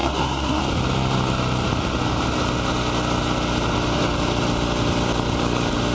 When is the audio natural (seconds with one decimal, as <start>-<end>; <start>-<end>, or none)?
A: 0.6-5.9